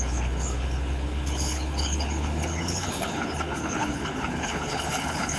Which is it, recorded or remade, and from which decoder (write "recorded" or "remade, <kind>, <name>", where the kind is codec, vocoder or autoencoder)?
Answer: remade, codec, HILCodec